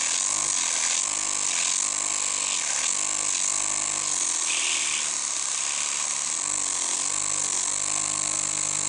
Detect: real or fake real